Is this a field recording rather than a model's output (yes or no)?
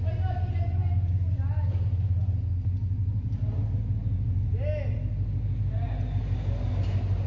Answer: yes